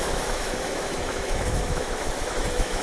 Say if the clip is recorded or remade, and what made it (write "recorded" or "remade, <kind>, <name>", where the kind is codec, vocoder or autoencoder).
remade, autoencoder, DAC-VAE